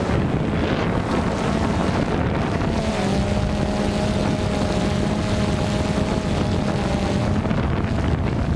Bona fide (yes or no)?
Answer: yes